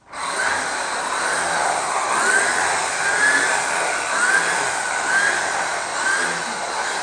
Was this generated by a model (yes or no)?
no